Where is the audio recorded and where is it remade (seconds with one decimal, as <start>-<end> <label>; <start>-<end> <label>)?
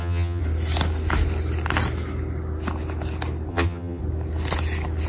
0.0-0.4 remade; 0.4-3.5 recorded; 3.5-4.0 remade; 4.0-5.1 recorded